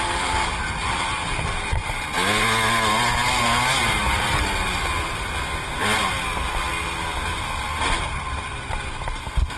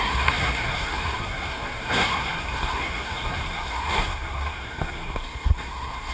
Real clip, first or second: first